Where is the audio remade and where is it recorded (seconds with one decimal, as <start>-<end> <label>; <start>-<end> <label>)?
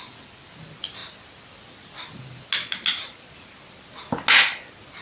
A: 0.0-5.0 recorded